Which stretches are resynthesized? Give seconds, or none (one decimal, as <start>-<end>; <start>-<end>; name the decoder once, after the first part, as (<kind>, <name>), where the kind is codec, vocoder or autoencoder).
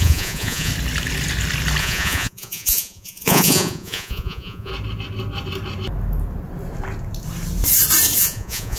0.0-0.7 (vocoder, Vocos); 1.8-4.7; 8.2-8.8